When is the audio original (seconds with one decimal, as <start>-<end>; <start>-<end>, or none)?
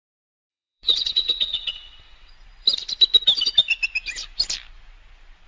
0.0-0.5; 2.3-5.5